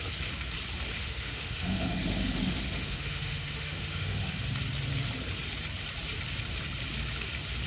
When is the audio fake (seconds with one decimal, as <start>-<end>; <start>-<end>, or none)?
1.0-4.5

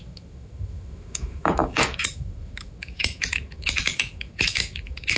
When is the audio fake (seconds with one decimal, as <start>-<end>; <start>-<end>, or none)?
0.0-5.2

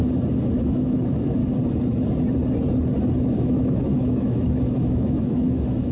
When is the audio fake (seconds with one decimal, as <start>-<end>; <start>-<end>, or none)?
0.6-1.4; 3.2-5.9

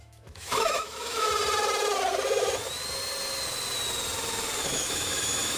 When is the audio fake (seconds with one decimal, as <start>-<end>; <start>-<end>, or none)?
0.0-1.3; 4.7-5.6